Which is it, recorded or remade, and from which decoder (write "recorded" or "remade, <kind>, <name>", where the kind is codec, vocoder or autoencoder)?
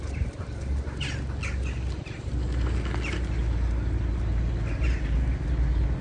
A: recorded